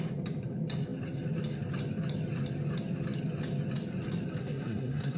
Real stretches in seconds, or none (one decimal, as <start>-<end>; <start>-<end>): 0.0-4.4